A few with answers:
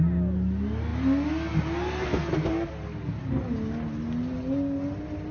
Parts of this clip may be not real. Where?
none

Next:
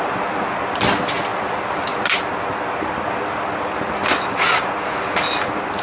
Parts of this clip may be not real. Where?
none